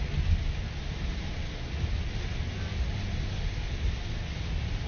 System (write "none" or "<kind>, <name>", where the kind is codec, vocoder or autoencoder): none